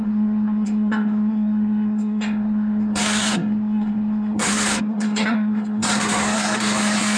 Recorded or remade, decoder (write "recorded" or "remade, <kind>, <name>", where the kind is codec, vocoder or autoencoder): remade, codec, SNAC